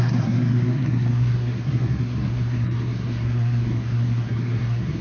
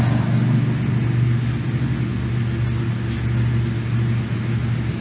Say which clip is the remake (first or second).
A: first